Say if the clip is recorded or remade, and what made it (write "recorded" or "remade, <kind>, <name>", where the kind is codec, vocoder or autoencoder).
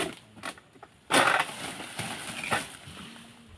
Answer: recorded